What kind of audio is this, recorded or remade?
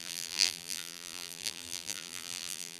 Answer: remade